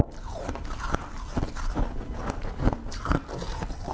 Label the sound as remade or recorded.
recorded